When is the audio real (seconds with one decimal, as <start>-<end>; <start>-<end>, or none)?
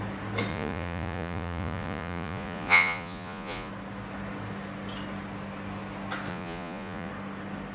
0.0-0.5; 3.7-6.3; 7.1-7.7